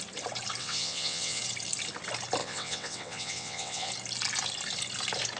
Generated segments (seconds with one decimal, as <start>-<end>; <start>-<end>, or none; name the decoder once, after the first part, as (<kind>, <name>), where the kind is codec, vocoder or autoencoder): 0.6-1.4 (vocoder, WaveNeXt); 2.4-3.9